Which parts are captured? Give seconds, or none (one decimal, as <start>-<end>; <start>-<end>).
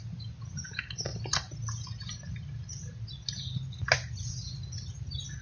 0.0-5.4